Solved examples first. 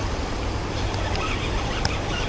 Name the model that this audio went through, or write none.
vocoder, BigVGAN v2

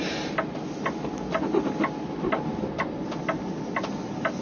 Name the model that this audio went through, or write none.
none